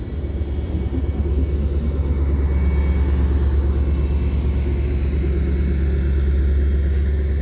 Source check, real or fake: real